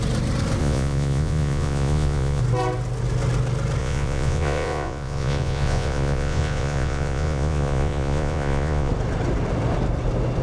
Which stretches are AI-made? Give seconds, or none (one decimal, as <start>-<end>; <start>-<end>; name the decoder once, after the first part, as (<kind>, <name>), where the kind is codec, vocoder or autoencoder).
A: 0.6-2.4 (vocoder, Vocos); 3.8-8.9